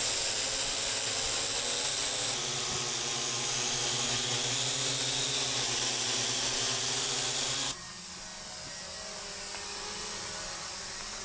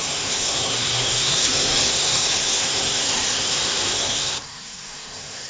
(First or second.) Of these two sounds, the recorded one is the first